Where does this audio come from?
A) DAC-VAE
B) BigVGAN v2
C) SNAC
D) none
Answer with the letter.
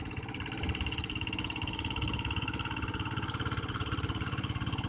B